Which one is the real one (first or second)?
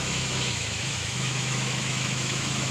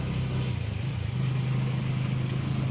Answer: second